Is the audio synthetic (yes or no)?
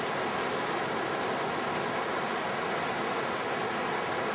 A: no